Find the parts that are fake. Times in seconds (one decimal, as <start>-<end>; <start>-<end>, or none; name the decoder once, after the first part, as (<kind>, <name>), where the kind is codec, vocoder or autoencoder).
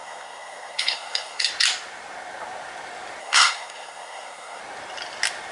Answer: 0.0-1.5 (codec, SNAC); 3.2-4.6